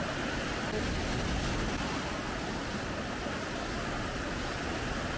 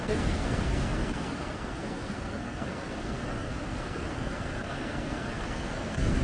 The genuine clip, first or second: first